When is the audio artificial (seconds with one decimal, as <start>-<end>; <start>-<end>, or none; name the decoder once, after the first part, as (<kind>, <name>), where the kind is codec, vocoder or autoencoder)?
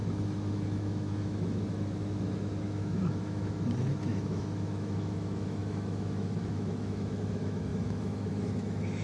0.0-9.0 (autoencoder, DAC-VAE)